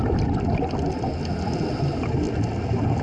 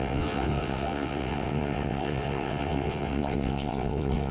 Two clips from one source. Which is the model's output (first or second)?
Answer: second